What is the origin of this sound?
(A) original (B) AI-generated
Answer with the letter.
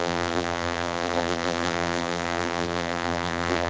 B